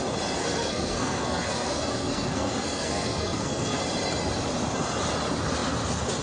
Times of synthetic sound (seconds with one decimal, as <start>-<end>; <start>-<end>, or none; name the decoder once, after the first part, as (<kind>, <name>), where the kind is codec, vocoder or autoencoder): 0.4-3.8 (codec, SNAC)

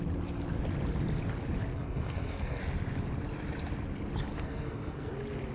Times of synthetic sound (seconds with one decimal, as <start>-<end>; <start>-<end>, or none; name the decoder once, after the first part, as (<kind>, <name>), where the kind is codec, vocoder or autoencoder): 1.7-2.6 (codec, SNAC); 4.3-5.1

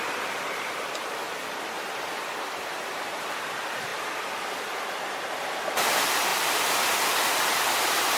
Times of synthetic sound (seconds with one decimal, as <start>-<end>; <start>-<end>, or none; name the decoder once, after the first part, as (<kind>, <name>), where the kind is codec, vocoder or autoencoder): 0.0-8.2 (vocoder, BigVGAN v2)

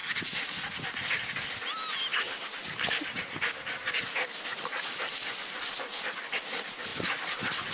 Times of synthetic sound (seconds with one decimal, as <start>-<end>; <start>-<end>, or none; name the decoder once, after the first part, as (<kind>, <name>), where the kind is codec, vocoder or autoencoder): 6.9-7.7 (vocoder, BigVGAN v2)